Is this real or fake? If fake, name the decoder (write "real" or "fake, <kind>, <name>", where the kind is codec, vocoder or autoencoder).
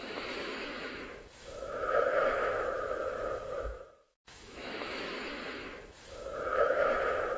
fake, autoencoder, DAC-VAE